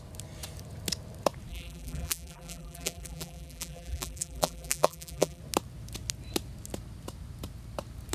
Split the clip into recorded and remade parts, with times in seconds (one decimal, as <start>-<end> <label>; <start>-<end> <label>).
0.0-1.5 recorded; 1.5-5.4 remade; 5.4-8.1 recorded